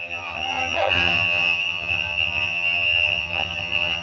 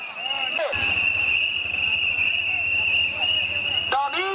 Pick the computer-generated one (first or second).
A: first